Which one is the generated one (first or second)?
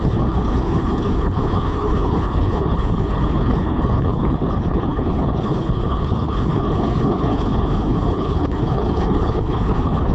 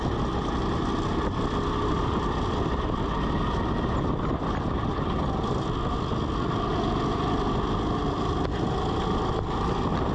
first